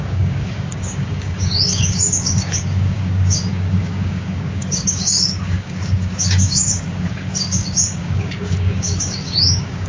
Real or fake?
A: fake